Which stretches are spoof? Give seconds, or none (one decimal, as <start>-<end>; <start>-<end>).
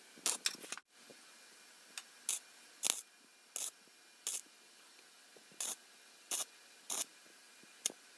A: none